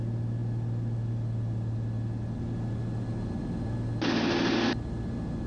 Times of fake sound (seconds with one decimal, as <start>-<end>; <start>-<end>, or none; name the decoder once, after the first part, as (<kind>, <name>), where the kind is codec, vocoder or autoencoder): none